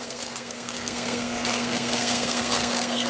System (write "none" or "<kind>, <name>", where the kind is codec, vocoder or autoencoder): codec, SNAC